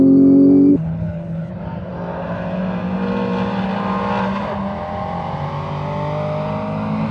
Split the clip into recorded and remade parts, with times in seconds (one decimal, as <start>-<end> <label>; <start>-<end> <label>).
0.0-0.7 recorded; 0.7-1.5 remade; 1.5-7.1 recorded